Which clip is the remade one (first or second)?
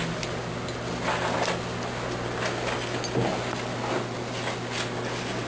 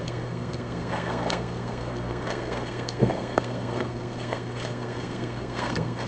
second